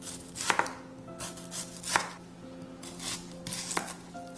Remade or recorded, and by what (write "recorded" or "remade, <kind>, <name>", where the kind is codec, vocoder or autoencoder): recorded